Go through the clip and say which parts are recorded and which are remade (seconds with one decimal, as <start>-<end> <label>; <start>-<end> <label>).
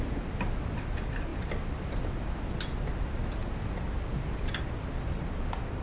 0.0-5.8 recorded